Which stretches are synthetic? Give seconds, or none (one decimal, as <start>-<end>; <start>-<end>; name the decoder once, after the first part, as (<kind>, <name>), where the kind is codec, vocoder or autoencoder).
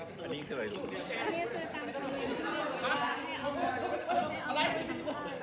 none